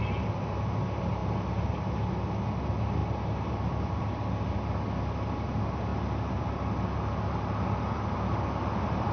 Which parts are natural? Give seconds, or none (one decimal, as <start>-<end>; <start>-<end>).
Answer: 0.0-9.1